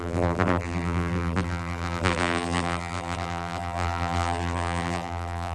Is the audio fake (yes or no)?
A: yes